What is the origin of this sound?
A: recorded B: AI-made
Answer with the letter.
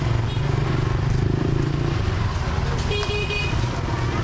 A